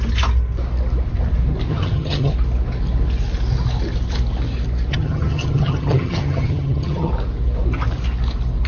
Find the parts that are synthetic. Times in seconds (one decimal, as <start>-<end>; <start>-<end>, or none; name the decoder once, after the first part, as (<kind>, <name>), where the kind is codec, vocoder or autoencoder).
1.7-2.3 (vocoder, HiFi-GAN); 4.9-7.1